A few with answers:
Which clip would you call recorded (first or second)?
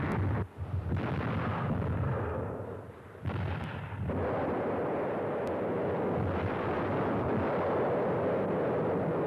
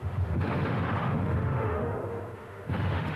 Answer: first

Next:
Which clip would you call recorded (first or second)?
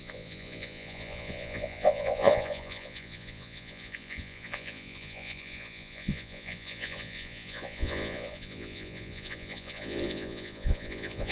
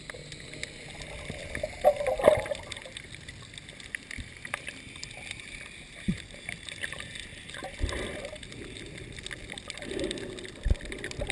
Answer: second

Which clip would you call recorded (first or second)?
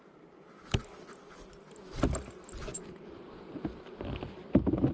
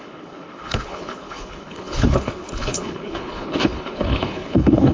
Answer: first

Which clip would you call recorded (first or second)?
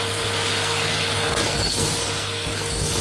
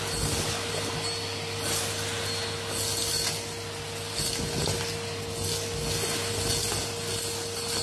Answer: second